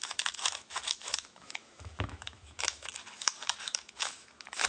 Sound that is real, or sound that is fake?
fake